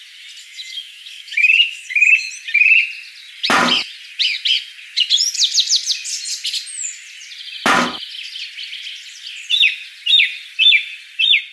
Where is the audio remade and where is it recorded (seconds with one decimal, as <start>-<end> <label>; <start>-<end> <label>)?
0.0-0.4 recorded; 0.4-2.3 remade; 2.3-11.5 recorded